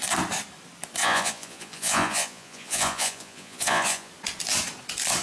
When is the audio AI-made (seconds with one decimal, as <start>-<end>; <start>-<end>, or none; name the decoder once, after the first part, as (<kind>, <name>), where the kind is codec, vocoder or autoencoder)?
1.0-4.1 (vocoder, Vocos)